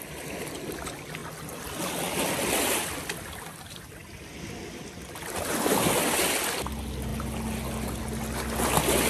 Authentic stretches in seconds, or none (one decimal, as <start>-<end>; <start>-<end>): 0.0-9.1